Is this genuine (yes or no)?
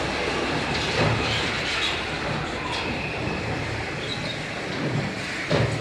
yes